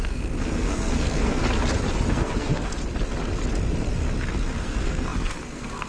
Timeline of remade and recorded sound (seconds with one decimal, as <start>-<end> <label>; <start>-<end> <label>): 0.0-1.4 remade; 1.4-2.1 recorded; 2.1-2.7 remade; 2.7-4.6 recorded; 4.6-5.9 remade